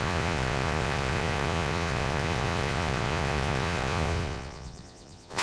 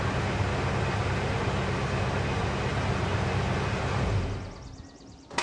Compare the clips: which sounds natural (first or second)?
second